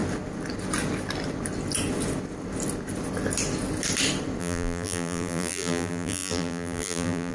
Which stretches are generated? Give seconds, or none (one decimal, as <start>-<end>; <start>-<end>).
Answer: 4.4-7.3